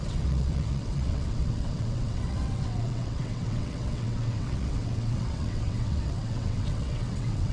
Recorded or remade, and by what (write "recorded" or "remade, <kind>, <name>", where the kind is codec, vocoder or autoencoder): remade, vocoder, WaveNeXt